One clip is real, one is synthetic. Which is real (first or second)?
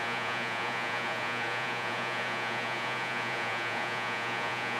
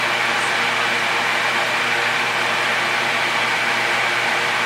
second